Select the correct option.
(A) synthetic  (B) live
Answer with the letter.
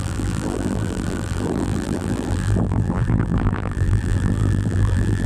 A